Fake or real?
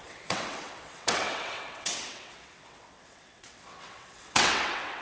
fake